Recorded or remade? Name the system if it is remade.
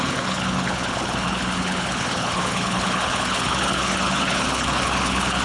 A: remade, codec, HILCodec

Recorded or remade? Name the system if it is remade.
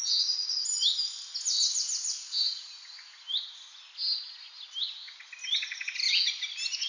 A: recorded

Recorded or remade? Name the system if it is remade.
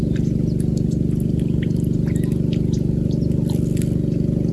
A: recorded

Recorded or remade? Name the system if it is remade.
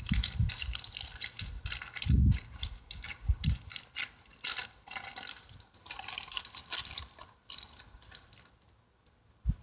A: recorded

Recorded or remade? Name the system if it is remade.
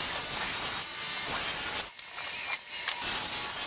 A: recorded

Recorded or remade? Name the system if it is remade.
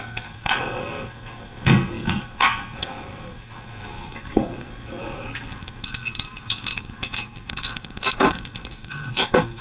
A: remade, codec, SNAC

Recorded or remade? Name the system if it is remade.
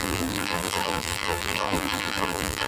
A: remade, vocoder, BigVGAN v2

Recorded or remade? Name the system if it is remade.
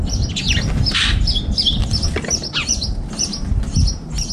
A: recorded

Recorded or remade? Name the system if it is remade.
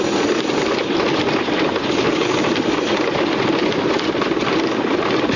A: remade, vocoder, BigVGAN v2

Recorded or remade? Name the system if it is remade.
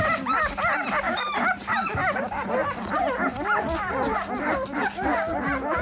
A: recorded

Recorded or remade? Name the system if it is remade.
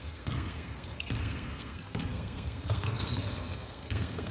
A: remade, codec, SNAC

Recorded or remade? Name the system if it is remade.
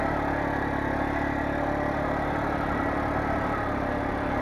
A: recorded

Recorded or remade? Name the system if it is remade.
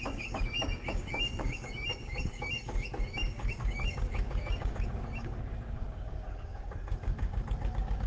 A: remade, codec, DAC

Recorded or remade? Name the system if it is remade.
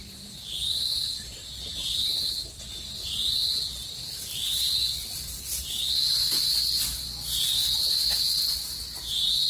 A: recorded